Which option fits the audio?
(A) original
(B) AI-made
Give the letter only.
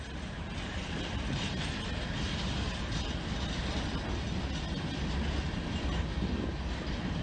A